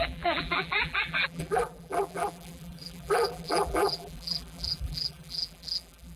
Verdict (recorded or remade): remade